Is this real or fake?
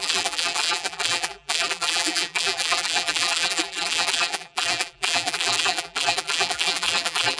fake